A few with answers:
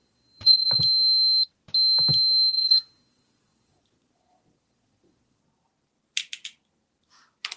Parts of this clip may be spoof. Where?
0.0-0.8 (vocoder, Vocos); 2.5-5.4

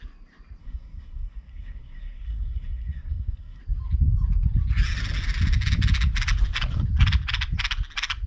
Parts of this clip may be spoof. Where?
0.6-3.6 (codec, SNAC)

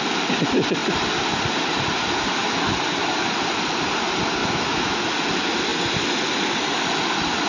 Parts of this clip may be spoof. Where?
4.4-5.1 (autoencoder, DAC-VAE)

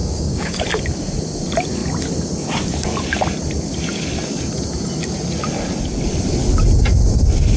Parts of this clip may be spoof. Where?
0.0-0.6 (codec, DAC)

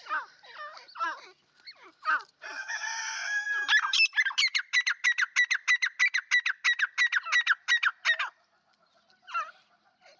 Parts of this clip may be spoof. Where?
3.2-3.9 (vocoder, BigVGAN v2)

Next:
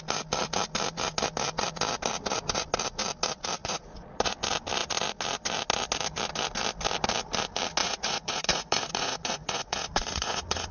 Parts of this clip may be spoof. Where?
3.6-4.3 (vocoder, Vocos); 7.8-10.7